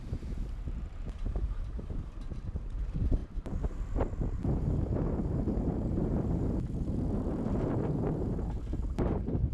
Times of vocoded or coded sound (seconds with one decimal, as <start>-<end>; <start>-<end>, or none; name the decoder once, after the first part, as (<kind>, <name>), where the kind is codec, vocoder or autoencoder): 0.0-9.5 (vocoder, BigVGAN v2)